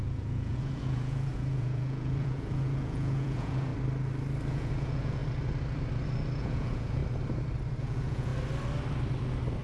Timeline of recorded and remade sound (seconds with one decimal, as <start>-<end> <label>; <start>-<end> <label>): 0.0-3.7 remade; 3.7-4.5 recorded; 4.5-5.2 remade; 5.2-6.4 recorded; 6.4-7.0 remade; 7.0-7.8 recorded; 7.8-8.3 remade; 8.3-9.6 recorded